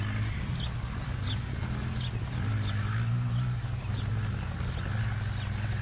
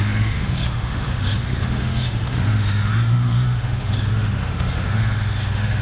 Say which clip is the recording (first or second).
first